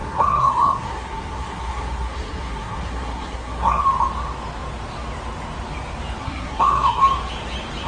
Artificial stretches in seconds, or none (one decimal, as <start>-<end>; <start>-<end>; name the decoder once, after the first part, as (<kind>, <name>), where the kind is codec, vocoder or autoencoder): 0.0-3.8 (codec, SNAC); 6.2-7.0